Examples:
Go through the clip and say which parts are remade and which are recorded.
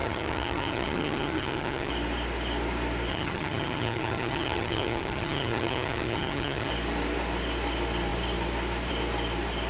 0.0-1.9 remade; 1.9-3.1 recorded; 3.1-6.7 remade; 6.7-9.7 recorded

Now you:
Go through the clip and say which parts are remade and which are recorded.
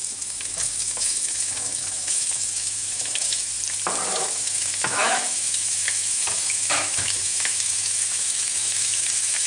0.0-3.5 remade; 3.5-4.1 recorded; 4.1-9.5 remade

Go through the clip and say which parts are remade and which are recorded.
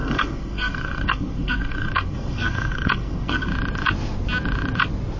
0.0-3.5 remade; 3.5-5.2 recorded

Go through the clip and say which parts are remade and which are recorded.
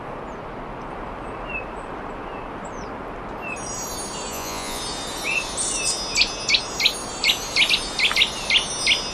0.0-4.3 recorded; 4.3-4.8 remade; 4.8-9.1 recorded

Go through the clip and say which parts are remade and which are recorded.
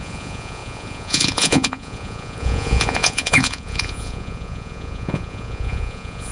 0.0-6.3 remade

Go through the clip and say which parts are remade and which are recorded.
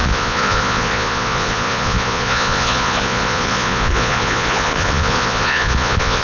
0.0-6.2 remade